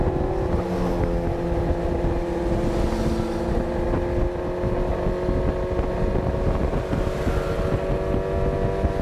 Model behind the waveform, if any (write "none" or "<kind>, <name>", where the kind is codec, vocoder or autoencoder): none